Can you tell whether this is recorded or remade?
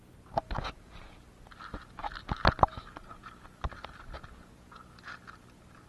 recorded